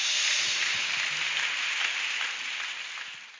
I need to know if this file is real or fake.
real